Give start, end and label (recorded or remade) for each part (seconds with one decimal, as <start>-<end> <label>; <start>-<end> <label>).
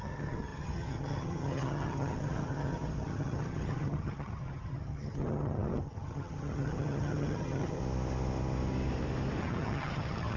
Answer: 0.0-7.8 remade; 7.8-9.4 recorded; 9.4-10.4 remade